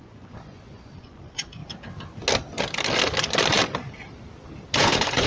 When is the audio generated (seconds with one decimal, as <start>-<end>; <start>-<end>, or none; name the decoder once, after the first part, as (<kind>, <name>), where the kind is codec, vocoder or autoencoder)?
0.0-1.6 (vocoder, Vocos); 4.8-5.3